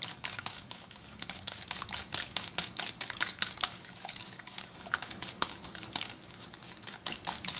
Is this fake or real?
fake